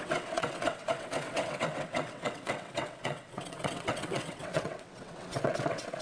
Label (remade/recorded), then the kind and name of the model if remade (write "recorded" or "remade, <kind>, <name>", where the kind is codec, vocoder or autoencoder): remade, vocoder, WaveNeXt